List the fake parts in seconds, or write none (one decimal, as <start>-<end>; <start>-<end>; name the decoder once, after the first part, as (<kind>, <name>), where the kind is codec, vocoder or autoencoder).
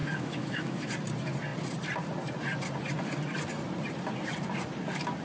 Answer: 0.0-0.9 (autoencoder, DAC-VAE)